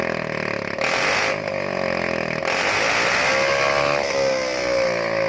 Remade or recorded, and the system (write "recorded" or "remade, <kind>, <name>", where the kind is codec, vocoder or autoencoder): recorded